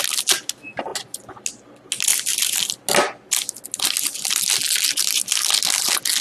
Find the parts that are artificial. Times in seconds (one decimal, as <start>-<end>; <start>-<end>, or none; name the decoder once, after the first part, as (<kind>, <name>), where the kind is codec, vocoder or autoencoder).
none

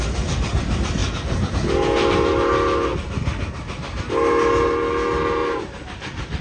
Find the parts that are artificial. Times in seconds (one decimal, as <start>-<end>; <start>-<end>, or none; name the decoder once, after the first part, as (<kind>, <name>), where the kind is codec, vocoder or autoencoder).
1.0-1.5 (vocoder, BigVGAN v2); 5.4-6.4

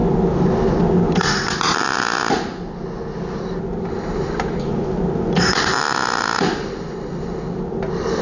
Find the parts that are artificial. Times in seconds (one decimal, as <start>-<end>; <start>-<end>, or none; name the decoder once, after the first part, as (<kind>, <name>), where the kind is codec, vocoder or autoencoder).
none

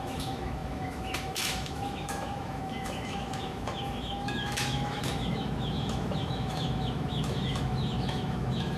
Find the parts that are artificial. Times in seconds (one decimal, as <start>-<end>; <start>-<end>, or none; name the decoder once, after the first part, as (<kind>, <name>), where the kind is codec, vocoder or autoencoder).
0.0-8.8 (autoencoder, DAC-VAE)

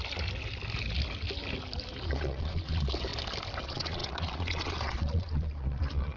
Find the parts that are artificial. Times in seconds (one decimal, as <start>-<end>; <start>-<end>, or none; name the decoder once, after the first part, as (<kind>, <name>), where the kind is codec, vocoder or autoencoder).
2.1-3.1 (vocoder, Vocos); 3.6-6.2

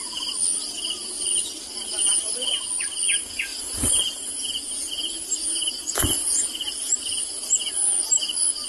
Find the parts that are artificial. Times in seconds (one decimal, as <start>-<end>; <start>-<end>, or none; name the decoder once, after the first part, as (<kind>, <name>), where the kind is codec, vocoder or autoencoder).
2.0-2.7 (vocoder, Vocos); 3.5-7.7

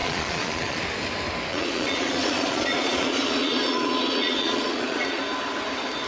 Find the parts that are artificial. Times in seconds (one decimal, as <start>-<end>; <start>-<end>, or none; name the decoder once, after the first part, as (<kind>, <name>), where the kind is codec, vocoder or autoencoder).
0.0-0.8 (vocoder, Vocos); 1.5-5.2